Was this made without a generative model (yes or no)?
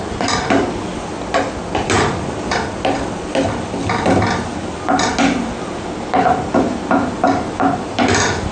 yes